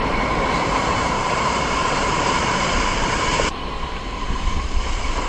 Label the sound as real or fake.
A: fake